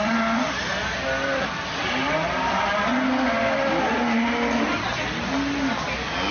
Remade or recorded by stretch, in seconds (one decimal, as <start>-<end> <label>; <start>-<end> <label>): 0.0-6.3 recorded

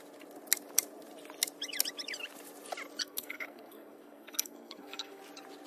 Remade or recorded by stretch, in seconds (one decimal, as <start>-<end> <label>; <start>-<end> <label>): 0.0-3.0 recorded; 3.0-5.2 remade; 5.2-5.7 recorded